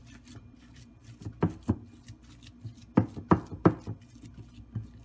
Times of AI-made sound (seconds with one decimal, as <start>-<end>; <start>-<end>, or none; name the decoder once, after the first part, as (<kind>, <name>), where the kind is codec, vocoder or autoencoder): 0.0-2.0 (vocoder, BigVGAN v2)